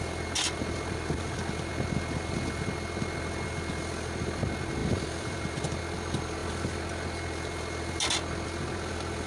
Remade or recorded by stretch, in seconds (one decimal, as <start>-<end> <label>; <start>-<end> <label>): 0.0-4.8 recorded; 4.8-5.8 remade; 5.8-9.3 recorded